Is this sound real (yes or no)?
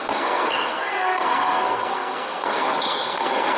no